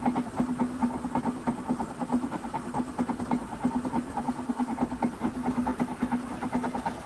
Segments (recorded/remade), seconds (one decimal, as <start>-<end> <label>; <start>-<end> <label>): 0.0-7.1 recorded